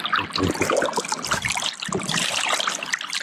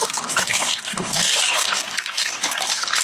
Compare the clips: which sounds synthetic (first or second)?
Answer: second